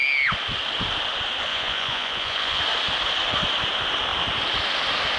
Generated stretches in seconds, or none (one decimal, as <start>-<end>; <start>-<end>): 1.5-2.6